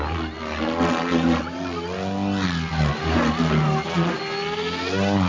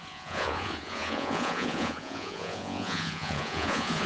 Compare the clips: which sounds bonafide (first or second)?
first